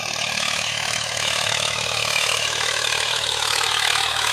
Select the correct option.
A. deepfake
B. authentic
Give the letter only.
A